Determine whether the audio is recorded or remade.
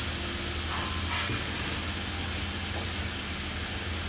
recorded